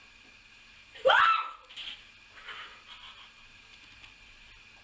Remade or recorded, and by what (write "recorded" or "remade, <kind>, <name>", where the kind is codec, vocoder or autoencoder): recorded